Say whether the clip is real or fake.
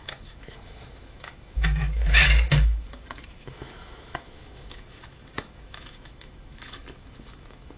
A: fake